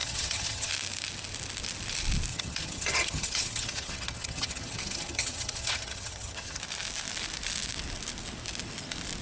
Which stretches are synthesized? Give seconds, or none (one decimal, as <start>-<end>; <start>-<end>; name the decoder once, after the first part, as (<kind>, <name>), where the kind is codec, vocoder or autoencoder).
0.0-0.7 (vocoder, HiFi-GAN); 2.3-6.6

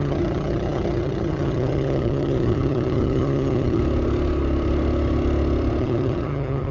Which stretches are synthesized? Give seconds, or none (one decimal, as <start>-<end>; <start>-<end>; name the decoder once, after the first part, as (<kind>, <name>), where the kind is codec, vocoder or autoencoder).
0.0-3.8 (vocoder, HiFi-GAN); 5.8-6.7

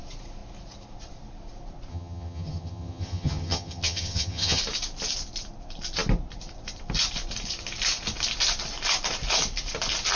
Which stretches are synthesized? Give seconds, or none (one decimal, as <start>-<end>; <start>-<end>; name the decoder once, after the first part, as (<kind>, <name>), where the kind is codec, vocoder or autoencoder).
1.9-4.6 (vocoder, HiFi-GAN)

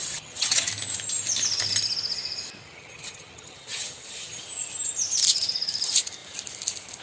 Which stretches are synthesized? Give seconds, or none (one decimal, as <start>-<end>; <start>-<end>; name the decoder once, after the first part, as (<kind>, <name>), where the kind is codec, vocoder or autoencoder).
0.0-0.7 (vocoder, HiFi-GAN); 2.6-4.4